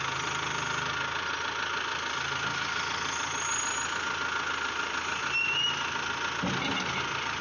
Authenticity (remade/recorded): recorded